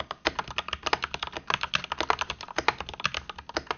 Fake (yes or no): no